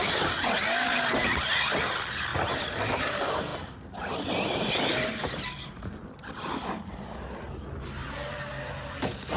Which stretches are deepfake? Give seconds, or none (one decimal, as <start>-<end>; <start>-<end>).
none

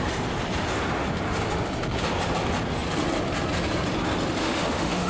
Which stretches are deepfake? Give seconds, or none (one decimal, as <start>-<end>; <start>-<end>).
4.4-5.1

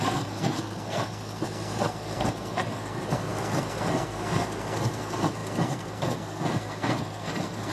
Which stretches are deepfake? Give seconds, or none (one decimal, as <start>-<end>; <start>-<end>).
0.0-7.7

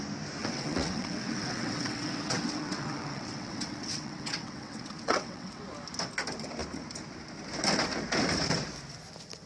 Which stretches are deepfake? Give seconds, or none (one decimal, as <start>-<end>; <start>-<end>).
0.4-5.6

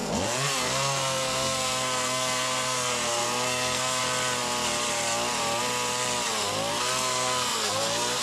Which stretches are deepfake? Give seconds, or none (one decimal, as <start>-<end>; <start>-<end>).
0.0-4.0; 6.7-8.2